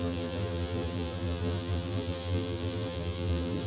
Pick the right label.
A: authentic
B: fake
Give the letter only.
B